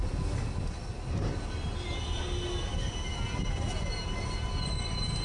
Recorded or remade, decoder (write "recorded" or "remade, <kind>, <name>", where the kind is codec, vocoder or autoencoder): recorded